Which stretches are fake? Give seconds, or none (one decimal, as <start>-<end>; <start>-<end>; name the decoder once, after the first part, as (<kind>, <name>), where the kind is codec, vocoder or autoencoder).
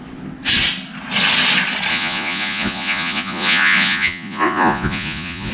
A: 1.9-5.5 (vocoder, Vocos)